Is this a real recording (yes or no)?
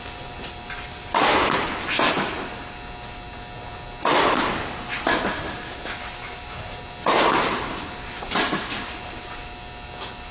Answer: yes